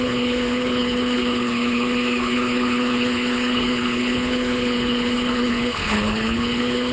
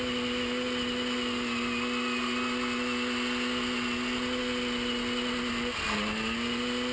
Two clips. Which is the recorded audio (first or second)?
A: second